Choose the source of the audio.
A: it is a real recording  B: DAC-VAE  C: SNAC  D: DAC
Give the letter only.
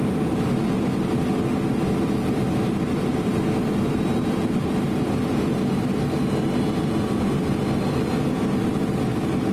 A